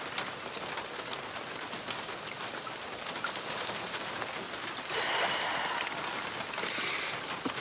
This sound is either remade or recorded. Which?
recorded